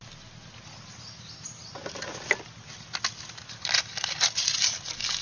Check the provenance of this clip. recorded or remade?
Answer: recorded